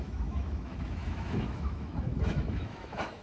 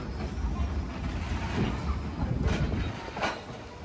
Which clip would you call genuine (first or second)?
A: second